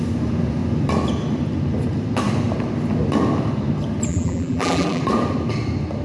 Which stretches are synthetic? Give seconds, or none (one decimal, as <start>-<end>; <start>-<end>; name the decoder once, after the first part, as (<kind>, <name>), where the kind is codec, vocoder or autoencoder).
4.1-5.0 (vocoder, BigVGAN v2)